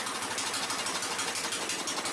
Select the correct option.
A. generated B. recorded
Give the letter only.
B